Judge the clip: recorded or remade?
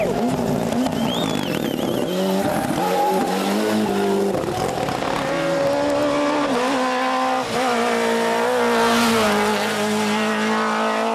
recorded